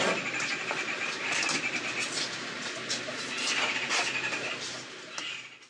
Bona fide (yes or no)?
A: yes